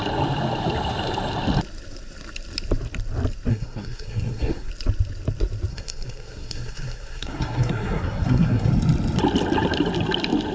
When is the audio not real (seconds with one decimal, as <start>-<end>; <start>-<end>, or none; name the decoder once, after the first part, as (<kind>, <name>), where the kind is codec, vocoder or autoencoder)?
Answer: 3.5-4.7 (codec, SNAC); 5.7-8.7